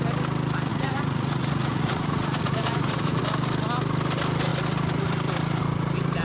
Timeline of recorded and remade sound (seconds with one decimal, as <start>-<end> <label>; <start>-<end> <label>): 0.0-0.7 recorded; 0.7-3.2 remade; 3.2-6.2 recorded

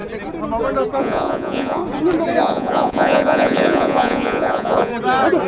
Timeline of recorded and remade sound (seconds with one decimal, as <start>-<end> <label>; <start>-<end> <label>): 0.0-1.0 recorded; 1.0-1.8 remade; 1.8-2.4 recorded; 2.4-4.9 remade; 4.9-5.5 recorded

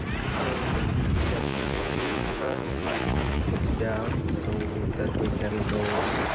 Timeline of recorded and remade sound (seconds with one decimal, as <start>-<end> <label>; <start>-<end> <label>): 0.0-1.4 recorded; 1.4-3.4 remade; 3.4-6.3 recorded

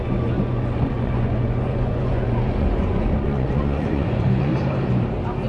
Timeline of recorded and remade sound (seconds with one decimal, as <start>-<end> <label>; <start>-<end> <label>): 0.0-4.5 remade; 4.5-5.5 recorded